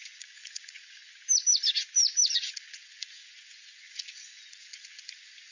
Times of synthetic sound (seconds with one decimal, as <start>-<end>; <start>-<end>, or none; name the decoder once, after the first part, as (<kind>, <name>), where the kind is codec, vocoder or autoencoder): 0.0-1.0 (vocoder, Vocos); 2.3-5.5